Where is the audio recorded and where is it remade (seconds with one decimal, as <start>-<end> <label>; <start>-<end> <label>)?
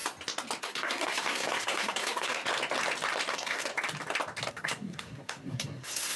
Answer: 0.0-0.6 recorded; 0.6-2.4 remade; 2.4-3.3 recorded; 3.3-3.7 remade; 3.7-4.5 recorded; 4.5-6.2 remade